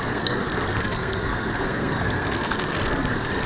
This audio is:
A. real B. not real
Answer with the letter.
B